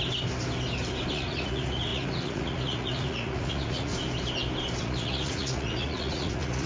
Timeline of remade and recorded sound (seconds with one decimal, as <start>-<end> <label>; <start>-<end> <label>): 0.0-1.1 recorded; 1.1-3.9 remade; 3.9-4.8 recorded; 4.8-6.7 remade